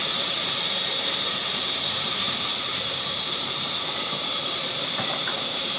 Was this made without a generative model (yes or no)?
no